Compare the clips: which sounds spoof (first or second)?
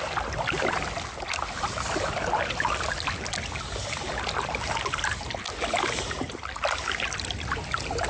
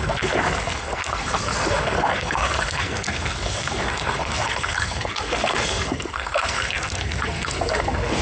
second